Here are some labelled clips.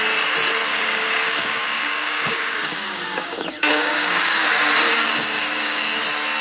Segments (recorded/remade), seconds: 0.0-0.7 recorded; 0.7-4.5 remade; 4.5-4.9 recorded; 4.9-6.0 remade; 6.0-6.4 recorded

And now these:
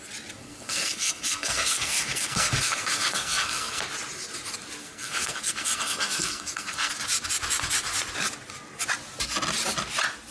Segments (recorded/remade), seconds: 0.0-0.4 recorded; 0.4-3.8 remade; 3.8-4.8 recorded; 4.8-6.9 remade; 6.9-10.3 recorded

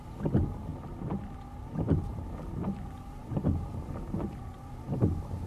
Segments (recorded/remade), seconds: 0.0-2.1 recorded; 2.1-5.5 remade

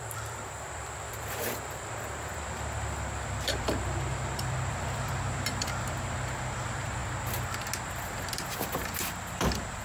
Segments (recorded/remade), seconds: 0.0-7.0 remade; 7.0-8.3 recorded; 8.3-9.8 remade

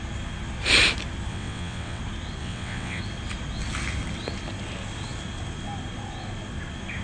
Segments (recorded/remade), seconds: 0.0-1.3 recorded; 1.3-2.0 remade; 2.0-2.4 recorded; 2.4-3.0 remade; 3.0-7.0 recorded

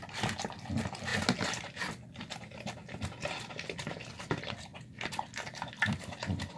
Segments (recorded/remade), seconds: 0.0-6.6 recorded

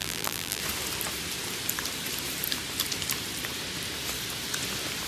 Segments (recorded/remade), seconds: 0.0-0.6 remade; 0.6-5.1 recorded